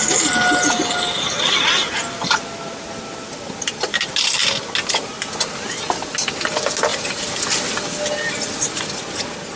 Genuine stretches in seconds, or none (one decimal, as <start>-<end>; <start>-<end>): 0.0-9.6